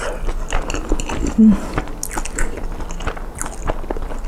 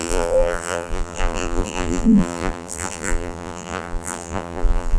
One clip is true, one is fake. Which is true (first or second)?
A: first